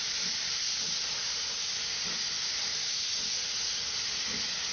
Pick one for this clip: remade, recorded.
recorded